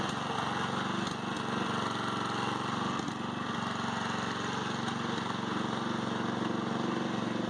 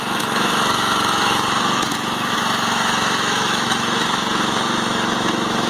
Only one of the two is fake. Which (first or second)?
second